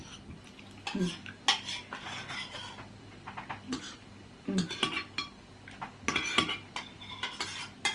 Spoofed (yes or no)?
no